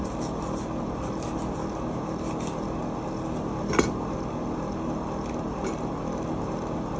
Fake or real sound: real